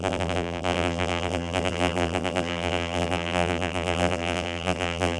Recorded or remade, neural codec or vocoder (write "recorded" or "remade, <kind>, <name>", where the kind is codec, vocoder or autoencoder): remade, vocoder, BigVGAN v2